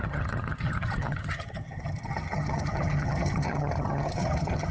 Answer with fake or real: fake